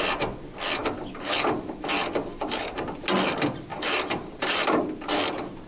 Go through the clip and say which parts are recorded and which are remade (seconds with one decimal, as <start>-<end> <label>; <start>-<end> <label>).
0.0-0.8 recorded; 0.8-2.8 remade; 2.8-3.7 recorded; 3.7-4.8 remade; 4.8-5.7 recorded